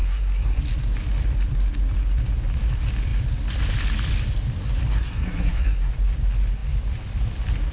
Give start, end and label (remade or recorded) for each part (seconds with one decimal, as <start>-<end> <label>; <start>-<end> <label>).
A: 0.0-0.6 remade; 0.6-4.9 recorded; 4.9-5.9 remade; 5.9-7.7 recorded